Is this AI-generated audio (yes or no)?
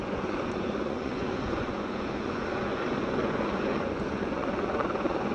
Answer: yes